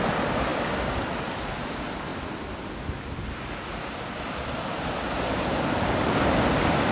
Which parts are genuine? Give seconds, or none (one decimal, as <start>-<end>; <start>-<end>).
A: 0.0-6.9